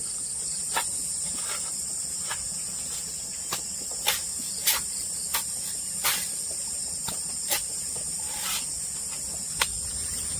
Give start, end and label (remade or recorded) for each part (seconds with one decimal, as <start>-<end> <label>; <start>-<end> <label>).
0.0-10.4 recorded